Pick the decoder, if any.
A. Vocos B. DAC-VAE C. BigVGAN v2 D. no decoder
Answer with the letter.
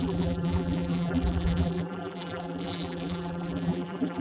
C